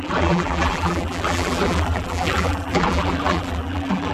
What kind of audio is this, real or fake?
fake